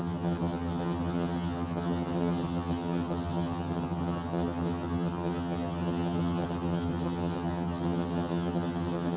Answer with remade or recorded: remade